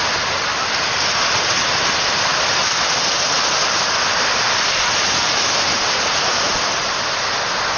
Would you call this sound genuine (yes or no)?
yes